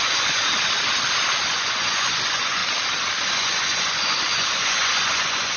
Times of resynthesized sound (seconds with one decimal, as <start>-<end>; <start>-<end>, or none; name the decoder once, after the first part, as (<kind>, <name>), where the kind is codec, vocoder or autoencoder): 0.0-0.4 (vocoder, Vocos); 1.5-2.6; 3.3-5.6